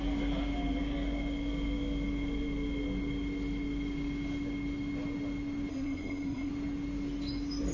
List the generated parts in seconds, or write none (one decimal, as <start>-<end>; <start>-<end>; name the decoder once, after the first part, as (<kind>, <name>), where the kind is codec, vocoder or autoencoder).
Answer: 5.7-6.5 (codec, SNAC)